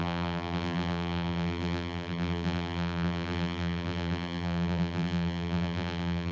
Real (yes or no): no